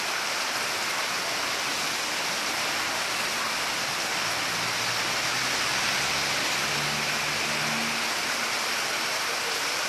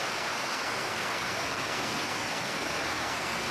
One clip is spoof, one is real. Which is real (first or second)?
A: first